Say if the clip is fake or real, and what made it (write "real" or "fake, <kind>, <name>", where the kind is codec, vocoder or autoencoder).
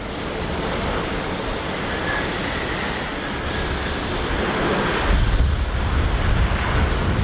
real